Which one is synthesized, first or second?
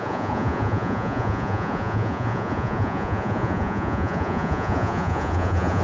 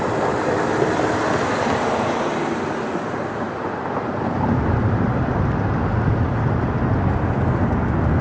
first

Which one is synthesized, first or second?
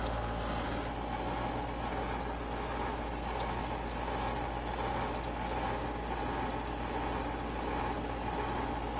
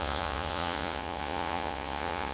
second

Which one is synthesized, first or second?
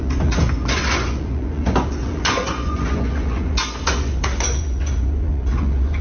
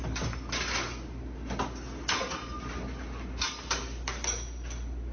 first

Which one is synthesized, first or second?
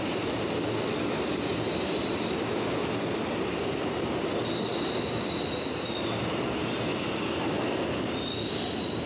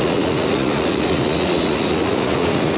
second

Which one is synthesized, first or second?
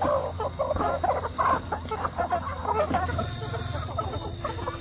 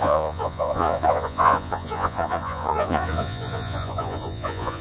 second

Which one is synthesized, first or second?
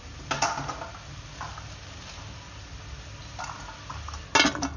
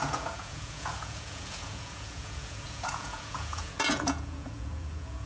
second